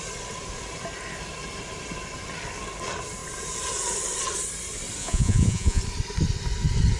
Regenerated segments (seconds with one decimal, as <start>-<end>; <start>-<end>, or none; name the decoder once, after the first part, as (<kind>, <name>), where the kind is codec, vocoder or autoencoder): 5.0-5.8 (vocoder, Vocos)